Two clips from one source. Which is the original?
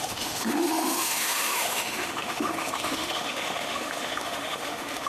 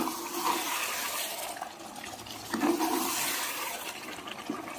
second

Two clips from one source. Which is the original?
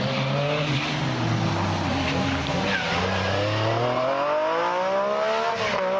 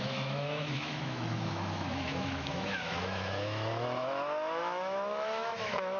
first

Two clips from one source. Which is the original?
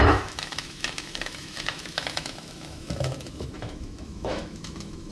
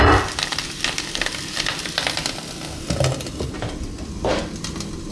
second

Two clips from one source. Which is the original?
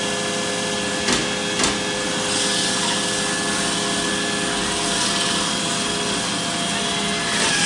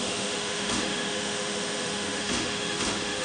first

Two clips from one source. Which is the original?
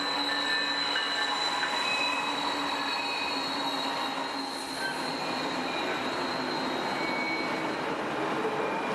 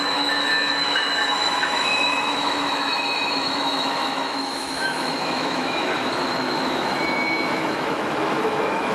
first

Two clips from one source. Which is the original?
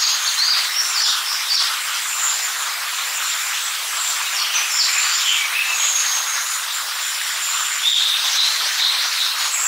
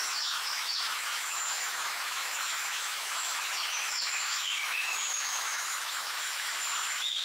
first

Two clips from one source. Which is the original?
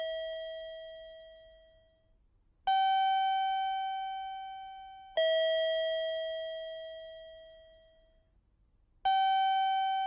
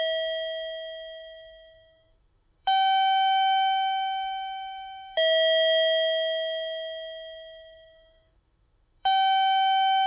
first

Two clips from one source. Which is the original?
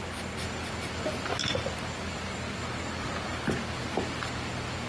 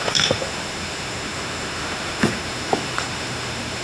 first